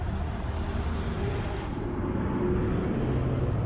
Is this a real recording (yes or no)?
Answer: yes